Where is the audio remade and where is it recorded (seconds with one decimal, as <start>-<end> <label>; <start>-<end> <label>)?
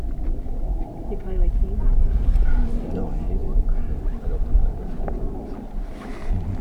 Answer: 0.0-6.6 recorded